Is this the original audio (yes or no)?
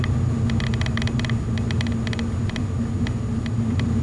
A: yes